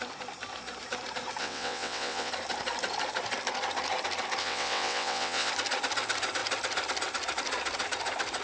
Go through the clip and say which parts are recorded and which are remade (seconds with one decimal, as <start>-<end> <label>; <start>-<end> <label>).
0.0-1.4 recorded; 1.4-2.3 remade; 2.3-4.4 recorded; 4.4-5.5 remade; 5.5-8.4 recorded